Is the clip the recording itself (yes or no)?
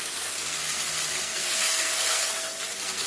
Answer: no